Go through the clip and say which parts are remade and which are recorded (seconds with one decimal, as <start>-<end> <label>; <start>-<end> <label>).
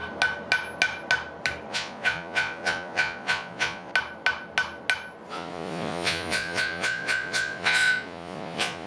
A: 0.0-1.7 recorded; 1.7-3.9 remade; 3.9-5.3 recorded; 5.3-8.9 remade